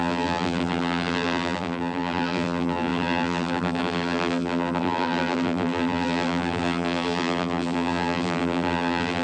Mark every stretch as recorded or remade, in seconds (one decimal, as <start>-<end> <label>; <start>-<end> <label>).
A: 0.0-9.2 remade